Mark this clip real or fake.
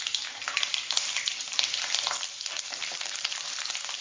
real